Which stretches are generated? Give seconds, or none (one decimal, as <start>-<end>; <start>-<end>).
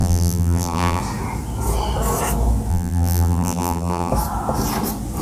0.0-1.0; 2.7-4.1